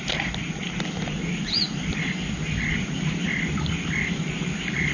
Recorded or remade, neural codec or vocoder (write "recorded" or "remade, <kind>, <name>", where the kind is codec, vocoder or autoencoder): recorded